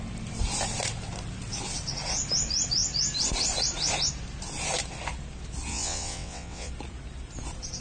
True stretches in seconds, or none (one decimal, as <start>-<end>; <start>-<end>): 0.0-5.7; 6.7-7.8